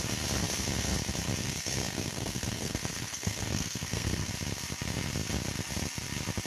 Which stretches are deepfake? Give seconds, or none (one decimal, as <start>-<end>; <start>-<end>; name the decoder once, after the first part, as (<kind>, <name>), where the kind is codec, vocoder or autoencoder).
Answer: 1.4-4.3 (codec, SNAC)